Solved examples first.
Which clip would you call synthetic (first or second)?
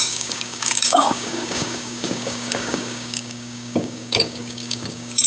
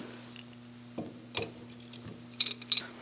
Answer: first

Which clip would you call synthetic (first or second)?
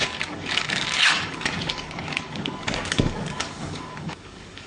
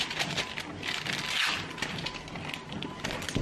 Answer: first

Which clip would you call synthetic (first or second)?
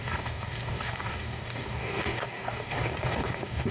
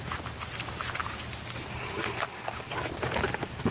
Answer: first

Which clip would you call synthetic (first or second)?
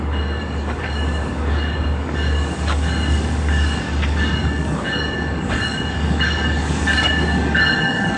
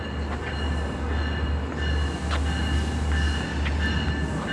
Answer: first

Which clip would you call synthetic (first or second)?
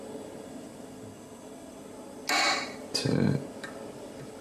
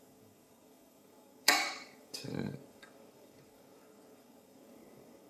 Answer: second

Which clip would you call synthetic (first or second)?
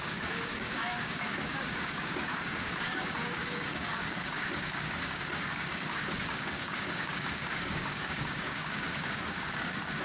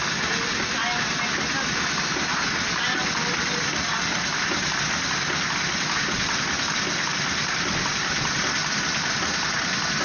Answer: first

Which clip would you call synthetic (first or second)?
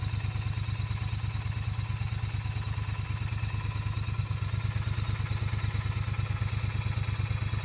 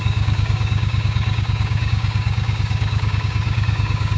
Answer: second